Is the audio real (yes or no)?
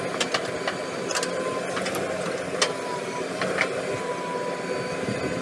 yes